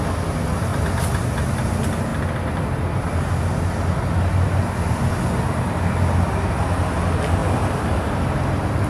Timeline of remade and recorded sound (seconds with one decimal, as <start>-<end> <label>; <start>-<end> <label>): 0.0-0.7 recorded; 0.7-1.2 remade; 1.2-2.1 recorded; 2.1-6.5 remade; 6.5-7.4 recorded; 7.4-8.2 remade; 8.2-8.9 recorded